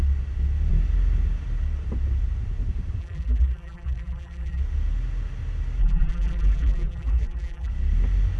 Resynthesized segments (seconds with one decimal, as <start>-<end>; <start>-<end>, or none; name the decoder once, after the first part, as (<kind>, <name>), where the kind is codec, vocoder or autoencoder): 3.0-4.6 (vocoder, BigVGAN v2); 5.8-7.7